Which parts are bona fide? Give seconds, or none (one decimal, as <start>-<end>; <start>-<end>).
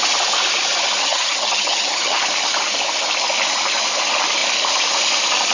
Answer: 0.0-1.0; 2.2-5.5